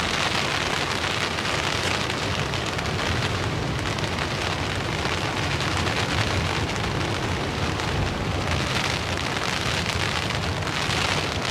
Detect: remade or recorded recorded